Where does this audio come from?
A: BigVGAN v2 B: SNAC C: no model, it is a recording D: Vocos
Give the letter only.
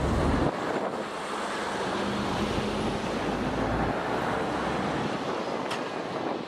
C